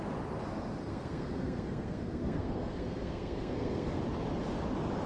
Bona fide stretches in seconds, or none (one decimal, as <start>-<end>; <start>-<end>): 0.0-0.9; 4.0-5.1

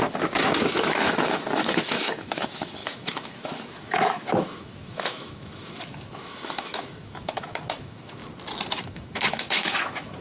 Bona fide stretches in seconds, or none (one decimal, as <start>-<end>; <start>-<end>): 0.0-0.6; 8.2-8.8

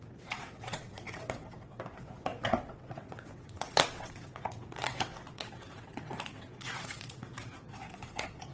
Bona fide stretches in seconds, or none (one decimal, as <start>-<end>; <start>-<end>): none

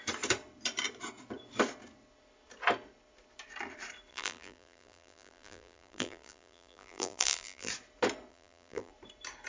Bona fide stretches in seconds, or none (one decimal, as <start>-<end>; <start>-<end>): 0.0-4.1; 7.7-8.3; 8.9-9.5